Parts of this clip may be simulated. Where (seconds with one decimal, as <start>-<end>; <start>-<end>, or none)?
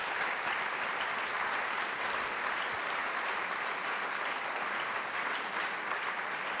none